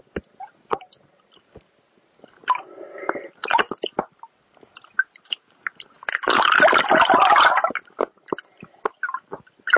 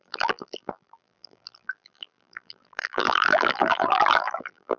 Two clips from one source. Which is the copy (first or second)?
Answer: second